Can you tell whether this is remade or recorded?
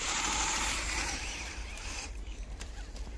remade